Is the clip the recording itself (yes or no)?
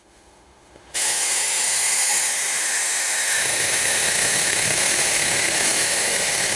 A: no